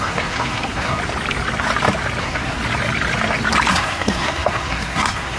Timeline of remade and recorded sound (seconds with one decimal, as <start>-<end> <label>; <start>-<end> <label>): 0.0-1.0 remade; 1.0-2.2 recorded; 2.2-2.6 remade; 2.6-3.7 recorded; 3.7-5.4 remade